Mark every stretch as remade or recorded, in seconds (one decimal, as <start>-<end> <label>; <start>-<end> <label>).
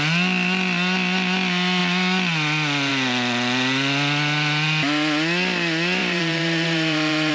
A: 0.0-6.0 recorded; 6.0-7.3 remade